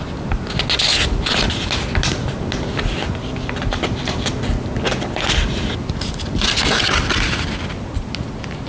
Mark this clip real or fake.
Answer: real